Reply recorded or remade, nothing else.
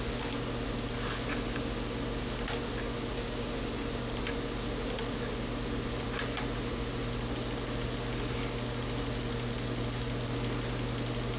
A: recorded